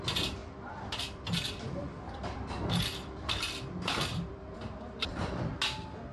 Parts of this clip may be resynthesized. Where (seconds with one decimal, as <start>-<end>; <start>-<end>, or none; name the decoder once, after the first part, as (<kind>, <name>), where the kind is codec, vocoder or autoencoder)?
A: 0.4-1.3 (vocoder, BigVGAN v2); 1.8-5.5

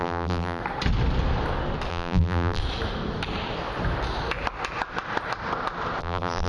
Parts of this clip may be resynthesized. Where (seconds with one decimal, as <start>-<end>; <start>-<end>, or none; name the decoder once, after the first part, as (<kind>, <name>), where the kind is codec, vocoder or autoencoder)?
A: 0.0-0.6 (vocoder, BigVGAN v2); 1.9-2.6; 6.0-6.5

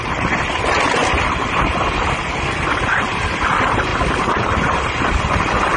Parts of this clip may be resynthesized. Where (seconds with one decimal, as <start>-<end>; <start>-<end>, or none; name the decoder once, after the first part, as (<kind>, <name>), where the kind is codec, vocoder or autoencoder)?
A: none

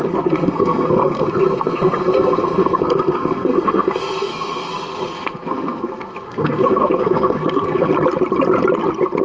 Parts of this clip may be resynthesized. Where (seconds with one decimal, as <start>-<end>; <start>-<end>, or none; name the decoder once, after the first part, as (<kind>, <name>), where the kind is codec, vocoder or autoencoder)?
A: 0.0-7.9 (codec, SNAC)

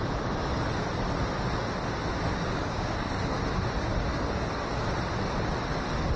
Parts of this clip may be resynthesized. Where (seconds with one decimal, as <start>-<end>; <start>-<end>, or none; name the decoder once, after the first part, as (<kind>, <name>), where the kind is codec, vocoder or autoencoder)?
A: 2.3-3.4 (codec, DAC); 4.1-4.7

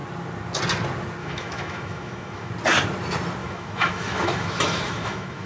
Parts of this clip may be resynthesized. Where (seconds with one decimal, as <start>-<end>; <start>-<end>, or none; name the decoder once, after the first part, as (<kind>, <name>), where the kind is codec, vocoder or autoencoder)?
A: 1.2-2.5 (autoencoder, DAC-VAE); 3.4-5.5

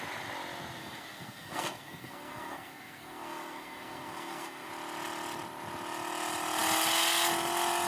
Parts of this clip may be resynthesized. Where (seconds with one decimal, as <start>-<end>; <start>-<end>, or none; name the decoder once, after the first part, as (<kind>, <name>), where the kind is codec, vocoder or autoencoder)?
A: 0.8-4.7 (codec, SNAC)

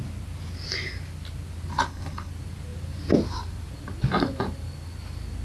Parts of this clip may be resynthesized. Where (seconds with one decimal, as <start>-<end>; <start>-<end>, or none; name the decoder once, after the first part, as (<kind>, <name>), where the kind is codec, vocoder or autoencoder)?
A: 1.7-2.3 (codec, HILCodec)